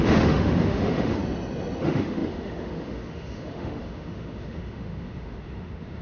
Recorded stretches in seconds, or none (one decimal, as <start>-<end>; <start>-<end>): 1.2-1.8